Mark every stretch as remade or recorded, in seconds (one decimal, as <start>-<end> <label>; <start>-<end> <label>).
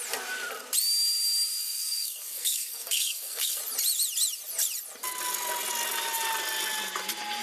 0.0-1.6 recorded; 1.6-3.6 remade; 3.6-7.4 recorded